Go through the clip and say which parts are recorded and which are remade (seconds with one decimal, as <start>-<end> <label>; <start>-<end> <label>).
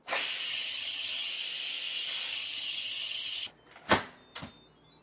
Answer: 0.0-0.5 recorded; 0.5-1.3 remade; 1.3-2.3 recorded; 2.3-3.5 remade; 3.5-5.0 recorded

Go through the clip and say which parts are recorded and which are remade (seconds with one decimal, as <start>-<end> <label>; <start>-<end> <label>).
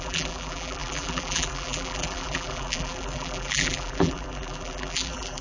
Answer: 0.0-5.4 remade